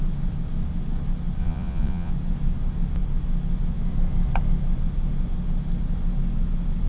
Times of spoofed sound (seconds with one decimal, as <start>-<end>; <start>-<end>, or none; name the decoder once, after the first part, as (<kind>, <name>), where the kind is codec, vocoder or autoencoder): 1.4-2.1 (vocoder, Vocos)